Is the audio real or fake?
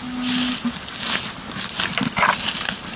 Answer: real